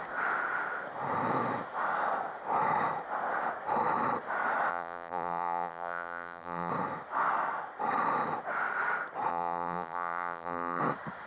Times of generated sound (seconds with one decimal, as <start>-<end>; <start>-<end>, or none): 4.7-6.7; 9.3-10.8